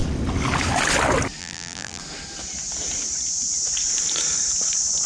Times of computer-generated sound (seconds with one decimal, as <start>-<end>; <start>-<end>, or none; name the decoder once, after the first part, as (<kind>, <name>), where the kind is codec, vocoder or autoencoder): 1.4-2.0 (vocoder, BigVGAN v2)

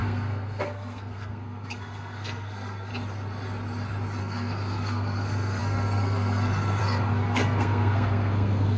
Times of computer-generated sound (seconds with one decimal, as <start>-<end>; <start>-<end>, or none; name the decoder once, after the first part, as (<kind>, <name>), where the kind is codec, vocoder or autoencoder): 0.0-2.9 (codec, SNAC); 4.2-8.8

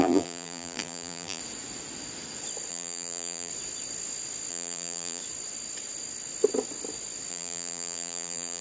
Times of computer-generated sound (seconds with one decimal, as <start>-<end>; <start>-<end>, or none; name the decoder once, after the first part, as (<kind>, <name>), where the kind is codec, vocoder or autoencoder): 0.0-1.4 (vocoder, BigVGAN v2); 2.7-3.5; 4.5-5.2; 7.3-8.6